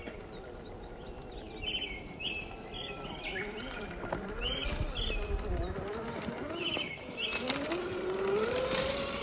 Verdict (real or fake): real